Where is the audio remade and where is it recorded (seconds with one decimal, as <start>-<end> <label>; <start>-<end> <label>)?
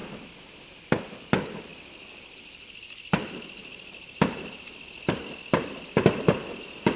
0.0-3.6 recorded; 3.6-4.7 remade; 4.7-7.0 recorded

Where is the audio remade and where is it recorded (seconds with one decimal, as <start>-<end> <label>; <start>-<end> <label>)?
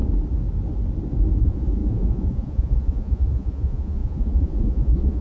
0.0-1.4 recorded; 1.4-5.2 remade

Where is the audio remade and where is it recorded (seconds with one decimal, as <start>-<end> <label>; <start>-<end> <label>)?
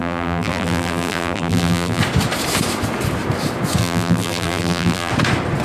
0.0-2.0 remade; 2.0-3.8 recorded; 3.8-5.1 remade; 5.1-5.6 recorded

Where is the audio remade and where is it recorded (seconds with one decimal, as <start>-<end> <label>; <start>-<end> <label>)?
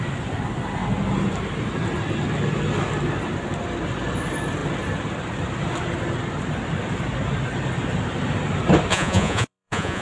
0.0-8.9 recorded; 8.9-10.0 remade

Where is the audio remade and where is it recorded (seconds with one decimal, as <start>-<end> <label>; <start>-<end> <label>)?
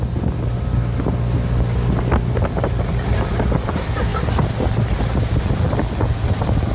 0.0-6.7 recorded